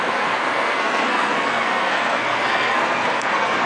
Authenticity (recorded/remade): remade